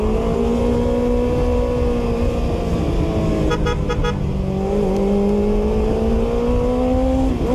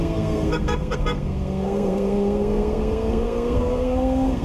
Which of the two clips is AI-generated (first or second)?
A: second